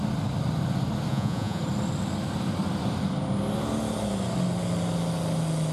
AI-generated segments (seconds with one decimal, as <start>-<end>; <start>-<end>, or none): 1.1-1.6